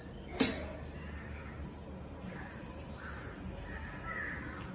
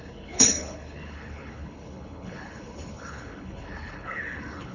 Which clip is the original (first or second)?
first